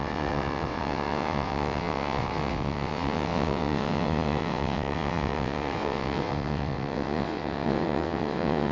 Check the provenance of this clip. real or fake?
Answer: fake